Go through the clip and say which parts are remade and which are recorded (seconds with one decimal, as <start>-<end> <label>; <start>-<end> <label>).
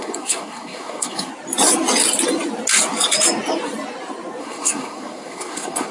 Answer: 0.0-1.3 remade; 1.3-4.4 recorded; 4.4-5.9 remade